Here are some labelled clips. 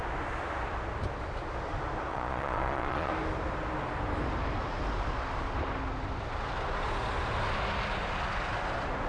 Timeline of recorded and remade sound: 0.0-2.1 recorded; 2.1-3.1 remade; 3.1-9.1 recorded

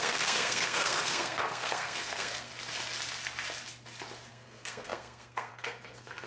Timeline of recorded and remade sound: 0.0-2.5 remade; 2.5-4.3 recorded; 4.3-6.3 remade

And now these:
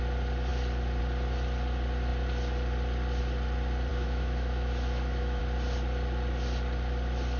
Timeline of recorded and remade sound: 0.0-3.9 recorded; 3.9-5.4 remade; 5.4-7.4 recorded

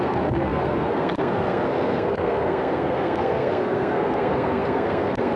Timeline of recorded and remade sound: 0.0-5.4 remade

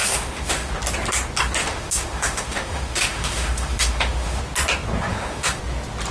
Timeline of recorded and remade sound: 0.0-0.7 remade; 0.7-1.6 recorded; 1.6-4.4 remade; 4.4-5.1 recorded; 5.1-5.6 remade; 5.6-6.1 recorded